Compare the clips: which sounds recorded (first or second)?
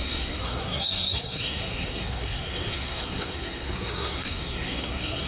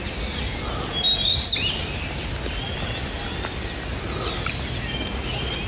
second